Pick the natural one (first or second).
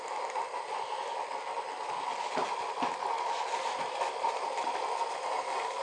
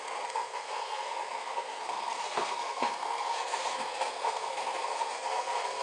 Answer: first